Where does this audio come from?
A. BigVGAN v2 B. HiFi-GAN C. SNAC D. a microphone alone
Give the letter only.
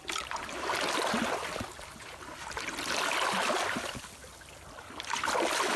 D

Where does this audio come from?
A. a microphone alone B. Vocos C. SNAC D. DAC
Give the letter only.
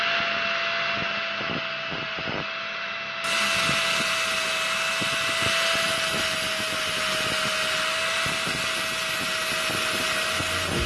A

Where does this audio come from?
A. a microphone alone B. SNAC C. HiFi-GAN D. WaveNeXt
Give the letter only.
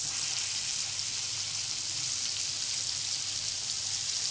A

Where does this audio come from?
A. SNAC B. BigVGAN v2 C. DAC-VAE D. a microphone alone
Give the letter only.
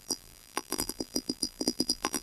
B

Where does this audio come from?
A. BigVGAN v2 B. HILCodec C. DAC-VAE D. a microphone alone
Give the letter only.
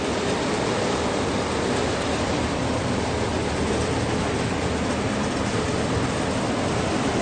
A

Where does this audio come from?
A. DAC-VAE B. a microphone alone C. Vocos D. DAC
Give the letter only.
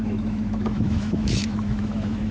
A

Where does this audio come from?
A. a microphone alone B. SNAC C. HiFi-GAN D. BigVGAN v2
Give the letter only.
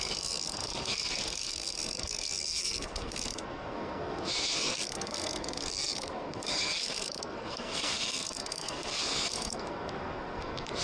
B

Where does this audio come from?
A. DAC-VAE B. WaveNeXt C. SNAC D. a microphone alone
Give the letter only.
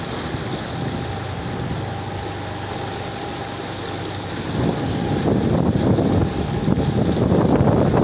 D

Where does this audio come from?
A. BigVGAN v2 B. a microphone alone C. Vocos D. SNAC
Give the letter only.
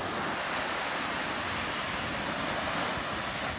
B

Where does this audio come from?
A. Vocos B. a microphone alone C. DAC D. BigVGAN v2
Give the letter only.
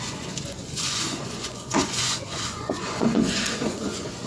A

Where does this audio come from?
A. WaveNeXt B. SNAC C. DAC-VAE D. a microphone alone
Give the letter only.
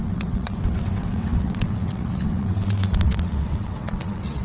A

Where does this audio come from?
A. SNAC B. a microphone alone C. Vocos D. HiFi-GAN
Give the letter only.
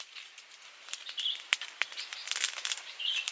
B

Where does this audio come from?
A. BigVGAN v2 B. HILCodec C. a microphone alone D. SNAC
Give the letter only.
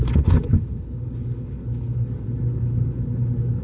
B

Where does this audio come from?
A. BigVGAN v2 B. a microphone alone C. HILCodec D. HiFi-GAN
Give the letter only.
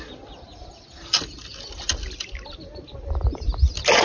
B